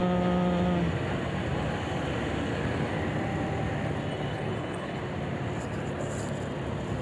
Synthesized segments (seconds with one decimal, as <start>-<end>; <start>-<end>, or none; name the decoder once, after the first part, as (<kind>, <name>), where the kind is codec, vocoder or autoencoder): 4.3-5.0 (codec, HILCodec)

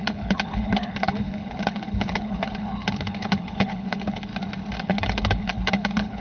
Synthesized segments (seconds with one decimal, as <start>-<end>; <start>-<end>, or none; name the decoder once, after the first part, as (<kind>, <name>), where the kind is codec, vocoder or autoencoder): 0.0-4.3 (codec, HILCodec); 4.8-6.2

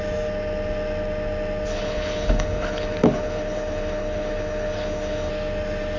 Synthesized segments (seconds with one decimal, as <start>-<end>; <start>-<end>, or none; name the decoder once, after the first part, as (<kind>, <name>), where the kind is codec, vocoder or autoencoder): 1.7-5.3 (codec, HILCodec)

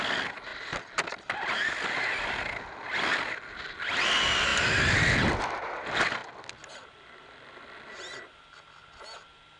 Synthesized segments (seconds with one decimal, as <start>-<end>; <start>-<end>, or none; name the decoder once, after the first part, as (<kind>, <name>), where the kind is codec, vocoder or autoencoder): none

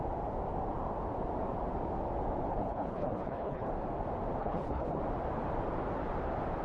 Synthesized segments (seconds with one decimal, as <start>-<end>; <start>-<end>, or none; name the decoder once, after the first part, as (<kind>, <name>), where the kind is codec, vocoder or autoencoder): 2.5-3.7 (codec, HILCodec); 4.4-5.0

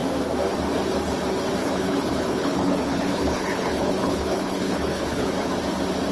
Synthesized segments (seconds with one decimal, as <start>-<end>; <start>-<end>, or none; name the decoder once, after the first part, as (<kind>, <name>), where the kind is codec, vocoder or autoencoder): 1.6-5.3 (codec, HILCodec)

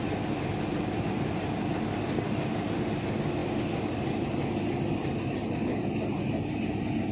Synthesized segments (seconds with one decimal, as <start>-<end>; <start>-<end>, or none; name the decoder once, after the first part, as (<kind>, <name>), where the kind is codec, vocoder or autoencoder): none